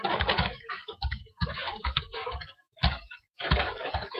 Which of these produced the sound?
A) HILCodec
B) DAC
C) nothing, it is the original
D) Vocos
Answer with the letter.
B